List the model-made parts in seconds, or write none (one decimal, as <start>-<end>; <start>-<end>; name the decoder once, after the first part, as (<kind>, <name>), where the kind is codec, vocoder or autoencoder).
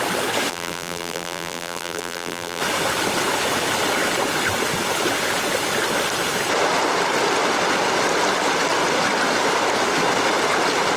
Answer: 0.5-2.6 (vocoder, BigVGAN v2)